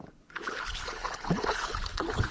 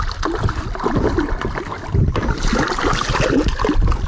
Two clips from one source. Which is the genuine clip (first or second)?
second